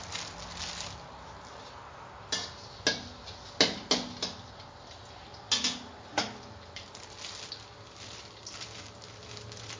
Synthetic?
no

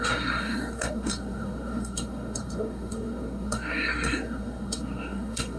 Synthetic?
yes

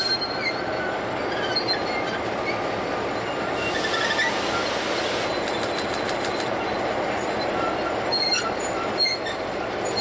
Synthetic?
no